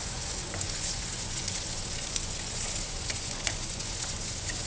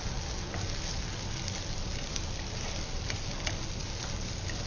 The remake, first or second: first